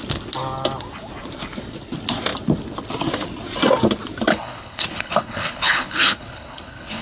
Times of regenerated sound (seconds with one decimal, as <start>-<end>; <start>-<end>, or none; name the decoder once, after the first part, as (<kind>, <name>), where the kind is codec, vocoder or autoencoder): 4.3-7.0 (codec, HILCodec)